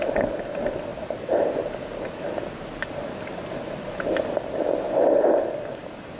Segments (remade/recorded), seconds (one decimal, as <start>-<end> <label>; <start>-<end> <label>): 0.0-6.2 recorded